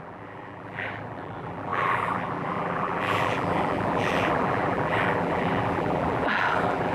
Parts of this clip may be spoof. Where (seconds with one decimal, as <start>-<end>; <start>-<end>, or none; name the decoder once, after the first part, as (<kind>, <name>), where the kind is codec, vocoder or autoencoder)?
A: 0.0-6.9 (vocoder, BigVGAN v2)

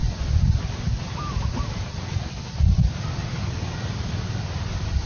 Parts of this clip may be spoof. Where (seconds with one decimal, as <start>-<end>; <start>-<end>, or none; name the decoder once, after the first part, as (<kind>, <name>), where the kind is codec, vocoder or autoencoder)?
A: none

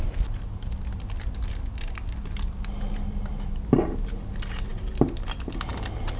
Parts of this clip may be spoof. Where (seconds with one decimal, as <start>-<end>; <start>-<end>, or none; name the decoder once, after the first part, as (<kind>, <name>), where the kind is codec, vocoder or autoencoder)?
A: none